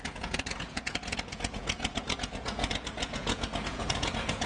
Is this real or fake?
fake